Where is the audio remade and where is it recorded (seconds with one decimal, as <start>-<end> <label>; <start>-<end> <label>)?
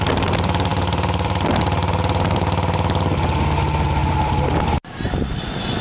0.0-0.7 recorded; 0.7-1.5 remade; 1.5-4.0 recorded; 4.0-5.8 remade